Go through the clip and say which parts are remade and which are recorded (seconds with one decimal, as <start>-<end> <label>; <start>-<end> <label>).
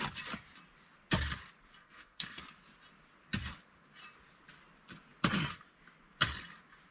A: 0.0-1.8 recorded; 1.8-2.4 remade; 2.4-6.9 recorded